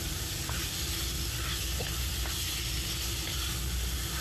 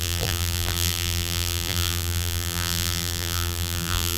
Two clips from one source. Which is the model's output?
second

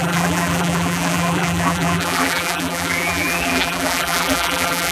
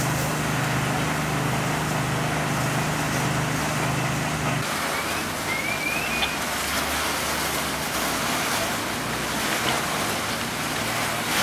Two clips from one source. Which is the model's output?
first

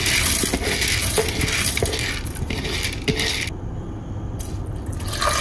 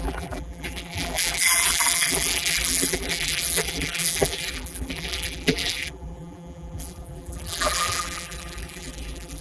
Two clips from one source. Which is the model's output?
second